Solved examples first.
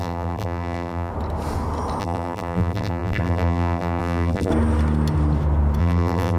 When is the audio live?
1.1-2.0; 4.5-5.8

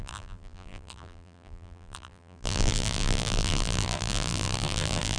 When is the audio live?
none

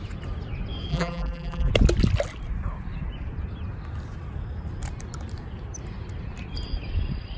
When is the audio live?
0.0-0.9; 1.7-7.4

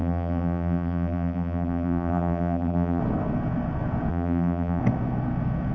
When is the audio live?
3.0-4.1; 4.8-5.7

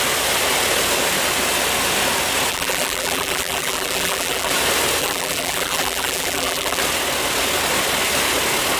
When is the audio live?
0.0-2.5; 4.5-5.0; 6.8-8.8

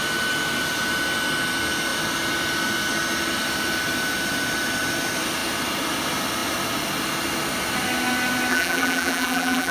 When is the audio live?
0.0-8.5

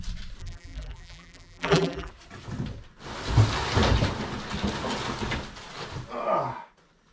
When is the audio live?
0.0-0.4; 2.1-7.1

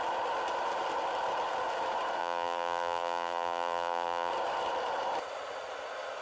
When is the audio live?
0.0-2.2; 4.3-6.2